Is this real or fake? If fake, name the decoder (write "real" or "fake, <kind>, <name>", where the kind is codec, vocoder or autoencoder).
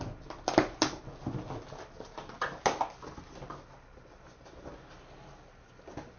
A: real